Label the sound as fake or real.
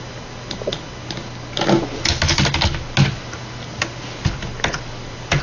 real